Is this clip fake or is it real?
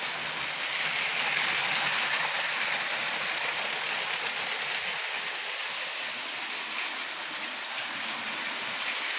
real